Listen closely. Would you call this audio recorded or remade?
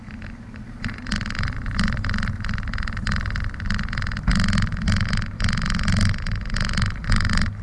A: recorded